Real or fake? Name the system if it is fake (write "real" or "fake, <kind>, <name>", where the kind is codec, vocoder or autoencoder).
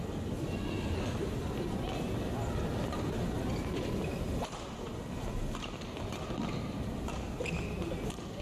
real